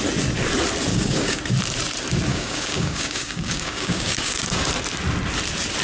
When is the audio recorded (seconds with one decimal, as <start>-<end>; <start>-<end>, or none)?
0.0-0.9; 1.4-2.3; 4.7-5.8